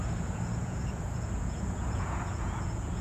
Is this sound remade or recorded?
remade